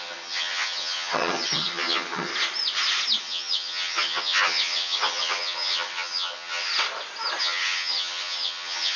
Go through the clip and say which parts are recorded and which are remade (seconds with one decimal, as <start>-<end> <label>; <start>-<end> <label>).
0.0-2.3 remade; 2.3-3.2 recorded; 3.2-6.7 remade; 6.7-7.4 recorded; 7.4-9.0 remade